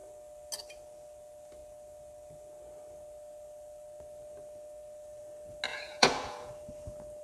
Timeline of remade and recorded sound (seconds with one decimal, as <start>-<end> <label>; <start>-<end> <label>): 0.0-5.7 recorded; 5.7-6.5 remade; 6.5-7.2 recorded